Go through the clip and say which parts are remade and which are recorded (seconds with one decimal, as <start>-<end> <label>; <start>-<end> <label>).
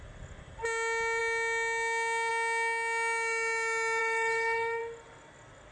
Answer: 0.0-4.0 recorded; 4.0-4.8 remade; 4.8-5.7 recorded